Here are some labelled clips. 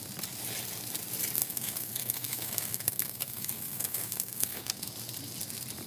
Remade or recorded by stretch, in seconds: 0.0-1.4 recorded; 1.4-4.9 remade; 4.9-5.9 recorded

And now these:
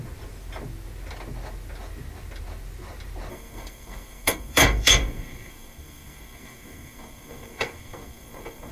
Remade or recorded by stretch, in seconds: 0.0-3.3 recorded; 3.3-8.7 remade

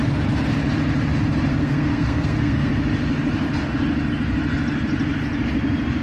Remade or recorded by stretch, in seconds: 0.0-1.5 recorded; 1.5-2.7 remade; 2.7-6.0 recorded

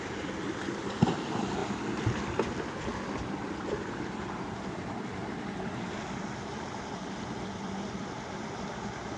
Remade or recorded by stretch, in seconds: 0.0-9.2 recorded

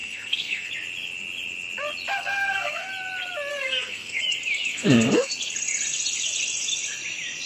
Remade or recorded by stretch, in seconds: 0.0-0.7 remade; 0.7-2.1 recorded; 2.1-2.9 remade; 2.9-3.5 recorded; 3.5-4.2 remade; 4.2-4.7 recorded; 4.7-5.3 remade; 5.3-7.5 recorded

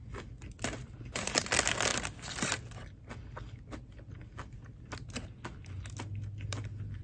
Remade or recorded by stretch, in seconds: 0.0-7.0 recorded

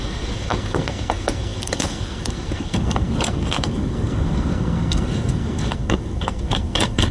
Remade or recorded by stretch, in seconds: 0.0-7.1 remade

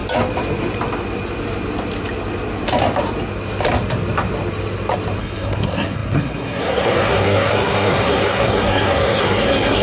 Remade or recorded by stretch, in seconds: 0.0-5.2 recorded; 5.2-9.8 remade